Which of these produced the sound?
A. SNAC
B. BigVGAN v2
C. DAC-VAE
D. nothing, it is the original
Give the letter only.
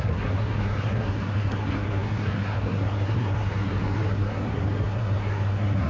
A